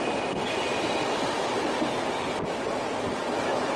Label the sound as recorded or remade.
recorded